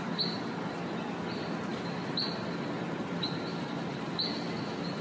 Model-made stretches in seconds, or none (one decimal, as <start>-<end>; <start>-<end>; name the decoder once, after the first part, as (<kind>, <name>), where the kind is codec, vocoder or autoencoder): none